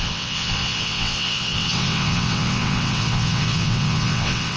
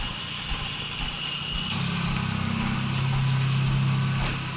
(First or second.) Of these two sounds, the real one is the second